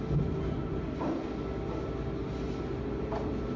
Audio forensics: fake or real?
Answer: real